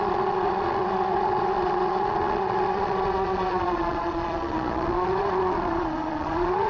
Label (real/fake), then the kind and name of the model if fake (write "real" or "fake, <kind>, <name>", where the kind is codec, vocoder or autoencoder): fake, vocoder, Vocos